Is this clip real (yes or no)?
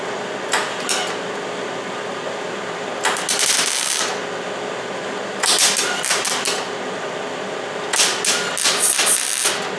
yes